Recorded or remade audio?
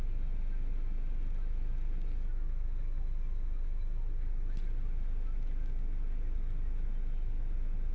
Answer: recorded